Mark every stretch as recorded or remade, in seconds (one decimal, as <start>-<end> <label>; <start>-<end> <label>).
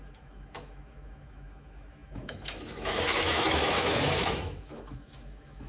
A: 0.0-5.7 remade